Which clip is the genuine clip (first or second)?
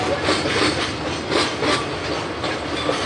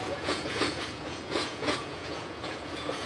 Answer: first